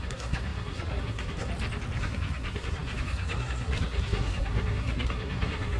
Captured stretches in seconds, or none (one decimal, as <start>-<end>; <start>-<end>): 1.5-2.0